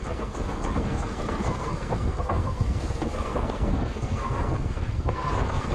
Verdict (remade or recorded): remade